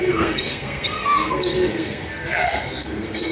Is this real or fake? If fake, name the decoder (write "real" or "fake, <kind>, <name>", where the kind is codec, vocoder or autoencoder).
fake, codec, SNAC